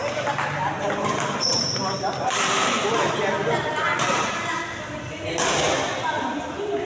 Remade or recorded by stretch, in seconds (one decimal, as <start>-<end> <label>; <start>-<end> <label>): 0.0-6.8 recorded